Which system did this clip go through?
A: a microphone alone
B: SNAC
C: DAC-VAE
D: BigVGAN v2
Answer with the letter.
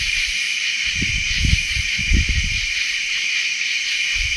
D